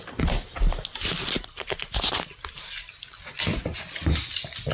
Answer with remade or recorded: recorded